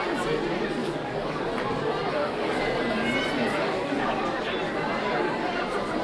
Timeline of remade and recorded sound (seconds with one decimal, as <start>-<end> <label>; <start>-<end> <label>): 0.0-0.8 recorded; 0.8-1.4 remade; 1.4-2.2 recorded; 2.2-2.8 remade; 2.8-3.6 recorded; 3.6-4.2 remade; 4.2-6.0 recorded